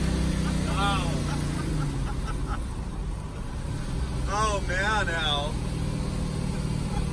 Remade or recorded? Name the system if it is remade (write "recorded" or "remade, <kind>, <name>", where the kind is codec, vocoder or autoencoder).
recorded